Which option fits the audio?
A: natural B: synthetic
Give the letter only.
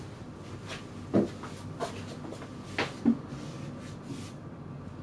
A